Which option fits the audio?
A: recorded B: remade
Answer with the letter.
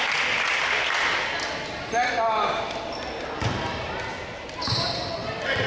A